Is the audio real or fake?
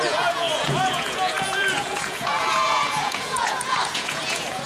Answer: fake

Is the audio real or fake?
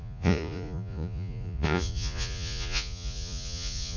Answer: fake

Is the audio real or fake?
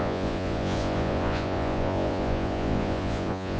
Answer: fake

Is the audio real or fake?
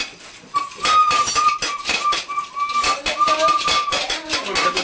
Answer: real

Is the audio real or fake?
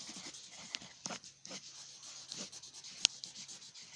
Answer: real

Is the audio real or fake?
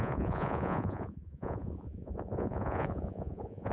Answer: fake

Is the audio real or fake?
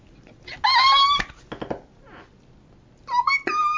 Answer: real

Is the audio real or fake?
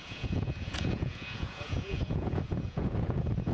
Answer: fake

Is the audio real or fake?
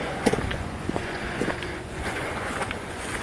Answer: fake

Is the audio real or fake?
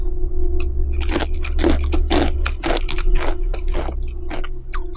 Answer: real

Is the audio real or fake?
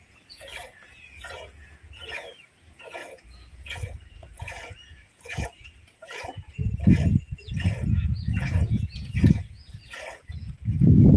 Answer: fake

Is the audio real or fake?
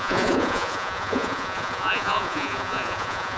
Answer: fake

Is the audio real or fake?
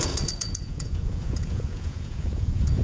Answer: fake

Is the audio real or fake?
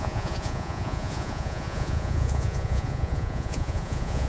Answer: fake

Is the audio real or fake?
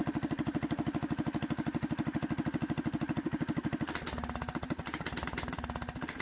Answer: real